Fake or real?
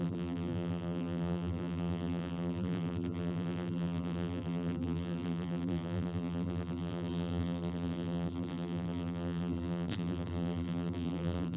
fake